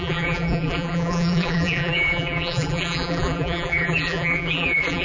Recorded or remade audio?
remade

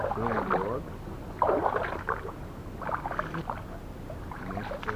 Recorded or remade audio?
recorded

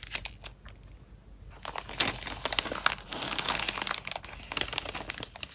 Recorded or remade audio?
recorded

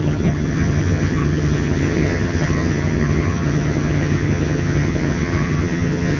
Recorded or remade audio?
remade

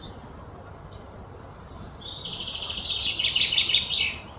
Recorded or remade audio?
recorded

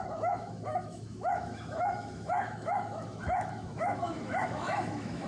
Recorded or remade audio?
remade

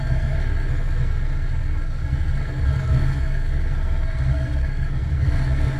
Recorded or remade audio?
remade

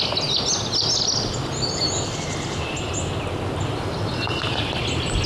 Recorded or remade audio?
recorded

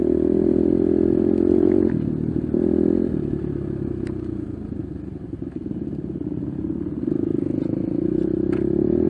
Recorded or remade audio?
recorded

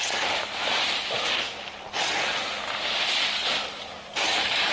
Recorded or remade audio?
recorded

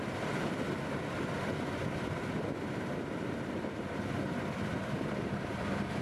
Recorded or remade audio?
remade